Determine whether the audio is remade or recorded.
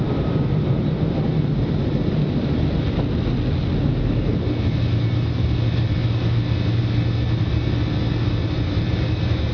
recorded